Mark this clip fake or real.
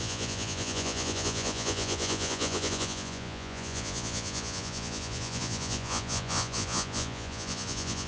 fake